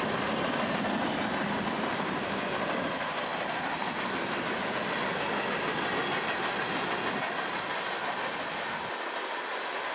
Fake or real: real